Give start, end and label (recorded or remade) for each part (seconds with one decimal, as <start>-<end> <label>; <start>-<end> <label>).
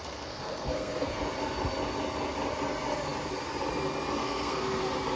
0.0-1.2 remade; 1.2-4.2 recorded; 4.2-4.8 remade; 4.8-5.2 recorded